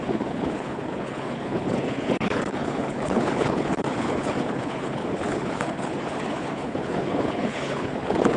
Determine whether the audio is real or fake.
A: fake